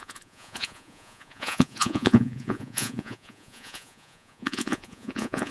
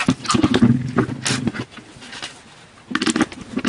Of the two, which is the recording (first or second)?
second